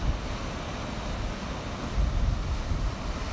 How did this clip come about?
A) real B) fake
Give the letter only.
A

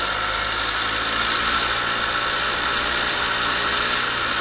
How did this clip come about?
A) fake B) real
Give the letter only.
B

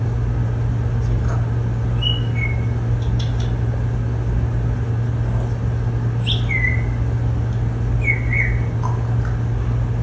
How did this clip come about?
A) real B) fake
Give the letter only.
A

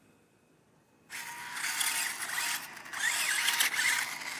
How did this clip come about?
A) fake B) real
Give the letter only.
B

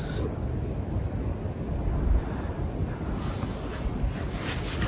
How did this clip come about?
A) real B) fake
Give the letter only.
A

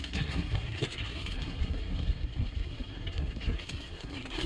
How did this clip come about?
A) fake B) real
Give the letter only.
A